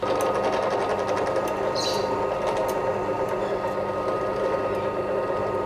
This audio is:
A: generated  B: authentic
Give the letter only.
B